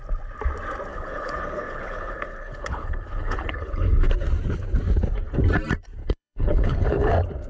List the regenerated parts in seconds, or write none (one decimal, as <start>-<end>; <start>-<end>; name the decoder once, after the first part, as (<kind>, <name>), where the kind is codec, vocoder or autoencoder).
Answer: 0.9-4.1 (codec, HILCodec); 6.0-7.1